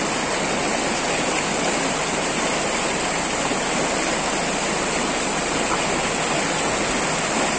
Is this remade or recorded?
recorded